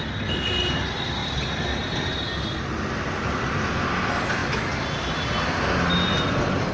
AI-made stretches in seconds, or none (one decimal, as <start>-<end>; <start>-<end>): none

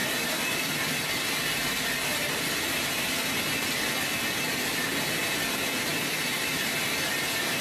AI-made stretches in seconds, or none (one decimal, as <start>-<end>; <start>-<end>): none

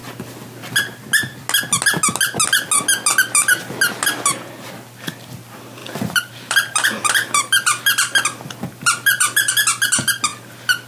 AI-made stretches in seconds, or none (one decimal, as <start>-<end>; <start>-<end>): 3.1-3.7; 5.8-9.5

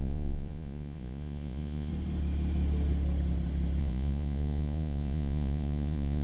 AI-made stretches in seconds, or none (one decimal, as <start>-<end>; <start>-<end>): 0.0-1.9; 3.8-6.2

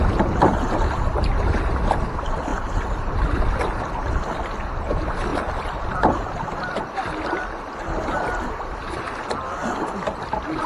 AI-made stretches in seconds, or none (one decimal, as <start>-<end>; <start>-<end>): 5.3-8.9

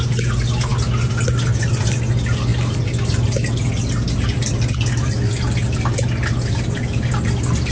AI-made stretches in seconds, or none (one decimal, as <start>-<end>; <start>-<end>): none

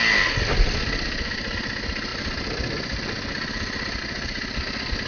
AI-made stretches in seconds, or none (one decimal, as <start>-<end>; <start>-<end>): none